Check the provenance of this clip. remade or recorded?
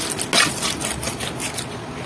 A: recorded